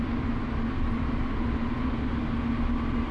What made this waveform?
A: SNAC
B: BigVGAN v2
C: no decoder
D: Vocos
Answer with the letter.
C